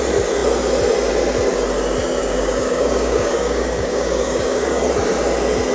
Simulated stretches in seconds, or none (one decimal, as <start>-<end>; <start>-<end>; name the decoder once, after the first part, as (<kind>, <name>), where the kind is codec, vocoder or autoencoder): 2.2-4.8 (codec, DAC)